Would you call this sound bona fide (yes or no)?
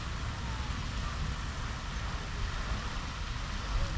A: yes